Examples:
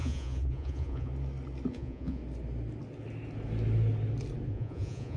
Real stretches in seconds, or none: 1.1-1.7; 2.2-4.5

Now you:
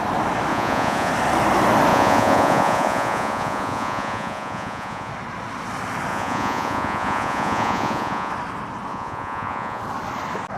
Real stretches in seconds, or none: 0.0-0.5; 1.1-1.9; 5.1-6.1; 8.3-8.9; 9.8-10.6

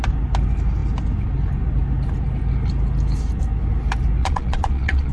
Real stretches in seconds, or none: 0.0-4.2

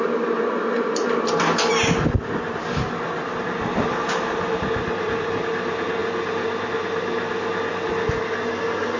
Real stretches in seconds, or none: 0.0-9.0